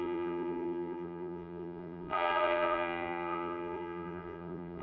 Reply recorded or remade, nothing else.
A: remade